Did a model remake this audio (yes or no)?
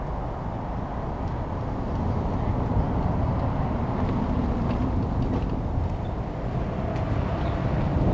no